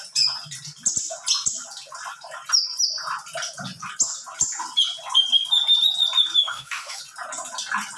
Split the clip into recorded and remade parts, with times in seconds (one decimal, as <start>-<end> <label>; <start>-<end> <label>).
0.0-6.4 recorded; 6.4-7.0 remade; 7.0-8.0 recorded

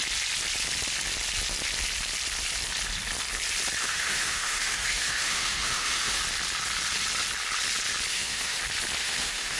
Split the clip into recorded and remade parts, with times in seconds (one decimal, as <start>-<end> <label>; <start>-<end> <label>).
0.0-3.8 recorded; 3.8-6.2 remade; 6.2-8.1 recorded; 8.1-8.6 remade; 8.6-9.0 recorded; 9.0-9.6 remade

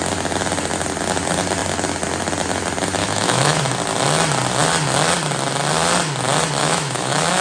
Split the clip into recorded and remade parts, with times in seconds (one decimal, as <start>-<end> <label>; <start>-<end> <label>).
0.0-3.0 recorded; 3.0-3.6 remade; 3.6-6.6 recorded; 6.6-7.4 remade

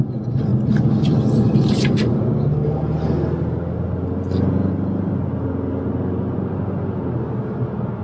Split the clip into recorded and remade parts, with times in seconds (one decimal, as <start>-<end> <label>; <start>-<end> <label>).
0.0-8.0 recorded

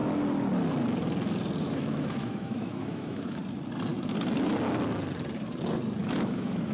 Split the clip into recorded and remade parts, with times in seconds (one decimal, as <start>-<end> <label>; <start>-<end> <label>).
0.0-1.6 recorded; 1.6-3.4 remade; 3.4-6.0 recorded; 6.0-6.7 remade

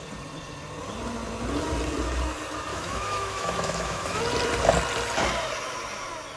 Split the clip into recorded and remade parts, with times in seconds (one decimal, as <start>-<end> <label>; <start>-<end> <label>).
0.0-2.7 recorded; 2.7-4.2 remade; 4.2-6.4 recorded

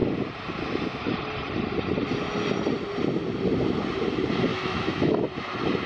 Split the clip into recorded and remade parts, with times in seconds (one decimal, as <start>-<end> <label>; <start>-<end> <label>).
0.0-4.5 recorded; 4.5-5.2 remade; 5.2-5.9 recorded

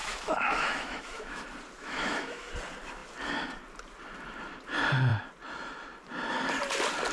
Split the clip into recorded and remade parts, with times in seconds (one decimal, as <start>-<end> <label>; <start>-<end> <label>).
0.0-1.4 remade; 1.4-1.8 recorded; 1.8-2.5 remade; 2.5-7.1 recorded